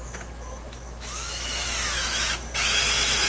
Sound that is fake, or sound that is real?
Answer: fake